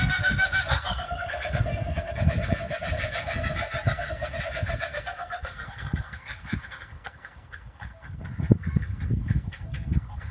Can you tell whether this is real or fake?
fake